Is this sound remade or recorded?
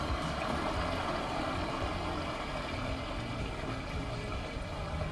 recorded